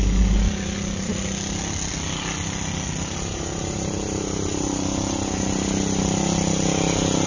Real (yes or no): yes